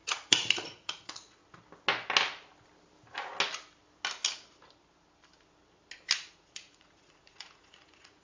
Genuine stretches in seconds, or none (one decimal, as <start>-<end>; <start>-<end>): 1.4-6.3